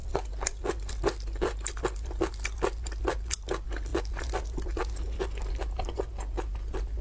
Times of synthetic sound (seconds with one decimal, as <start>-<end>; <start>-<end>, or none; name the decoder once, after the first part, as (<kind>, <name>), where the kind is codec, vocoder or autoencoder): none